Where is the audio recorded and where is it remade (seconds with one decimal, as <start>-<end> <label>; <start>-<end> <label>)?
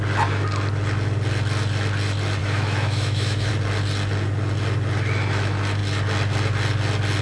0.0-2.4 recorded; 2.4-3.5 remade; 3.5-7.2 recorded